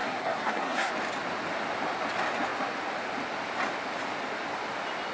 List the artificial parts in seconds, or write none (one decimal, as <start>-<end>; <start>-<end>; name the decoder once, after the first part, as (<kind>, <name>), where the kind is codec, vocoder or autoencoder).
0.0-0.9 (codec, SNAC)